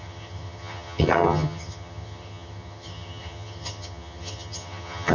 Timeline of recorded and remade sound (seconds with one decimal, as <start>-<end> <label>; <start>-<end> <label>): 0.0-5.1 remade